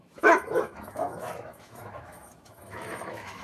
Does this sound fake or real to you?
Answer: fake